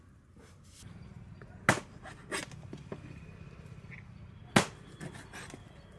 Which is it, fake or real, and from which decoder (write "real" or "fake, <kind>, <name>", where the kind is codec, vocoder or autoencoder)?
real